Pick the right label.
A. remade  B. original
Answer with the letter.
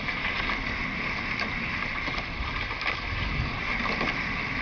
B